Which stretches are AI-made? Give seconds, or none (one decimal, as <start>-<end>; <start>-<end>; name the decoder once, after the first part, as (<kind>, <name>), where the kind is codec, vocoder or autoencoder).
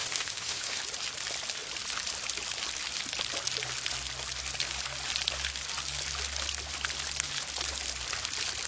0.0-0.8 (autoencoder, DAC-VAE)